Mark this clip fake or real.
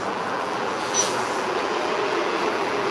fake